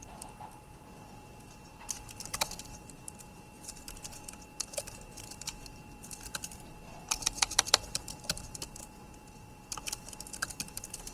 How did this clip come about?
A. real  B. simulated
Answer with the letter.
B